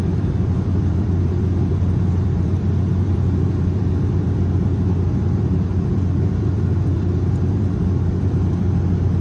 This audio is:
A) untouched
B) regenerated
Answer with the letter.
B